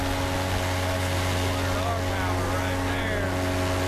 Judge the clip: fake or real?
real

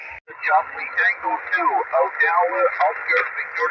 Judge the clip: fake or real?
real